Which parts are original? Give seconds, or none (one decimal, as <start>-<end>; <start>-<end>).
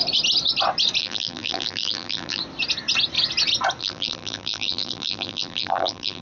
0.0-1.0; 2.4-3.8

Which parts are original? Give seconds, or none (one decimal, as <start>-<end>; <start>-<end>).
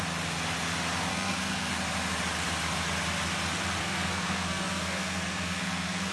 0.0-1.1; 1.7-3.8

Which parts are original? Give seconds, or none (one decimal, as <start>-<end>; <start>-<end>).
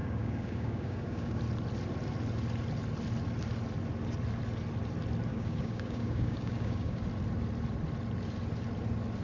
1.4-5.3; 7.0-9.2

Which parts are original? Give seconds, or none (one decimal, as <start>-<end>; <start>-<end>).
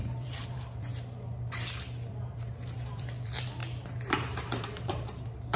0.9-2.1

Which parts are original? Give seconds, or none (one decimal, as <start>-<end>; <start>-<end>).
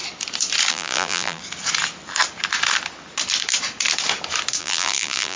0.0-0.7; 1.4-4.6